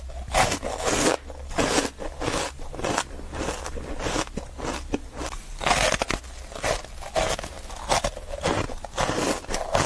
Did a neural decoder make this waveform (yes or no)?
no